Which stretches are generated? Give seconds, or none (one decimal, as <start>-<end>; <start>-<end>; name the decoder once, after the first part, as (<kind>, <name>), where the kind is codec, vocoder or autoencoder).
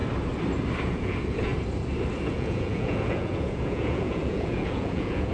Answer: 0.8-1.5 (vocoder, Vocos); 2.3-5.3